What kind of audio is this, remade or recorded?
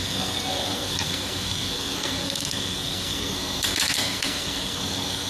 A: remade